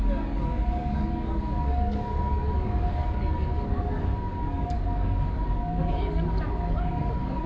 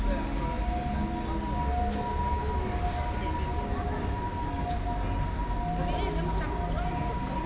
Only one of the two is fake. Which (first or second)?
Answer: first